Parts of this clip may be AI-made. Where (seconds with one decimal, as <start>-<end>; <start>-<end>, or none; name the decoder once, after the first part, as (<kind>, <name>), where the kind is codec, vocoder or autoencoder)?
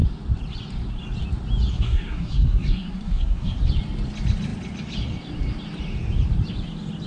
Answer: 1.7-3.6 (codec, SNAC)